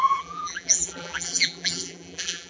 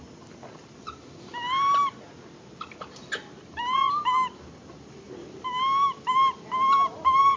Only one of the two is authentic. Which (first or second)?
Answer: second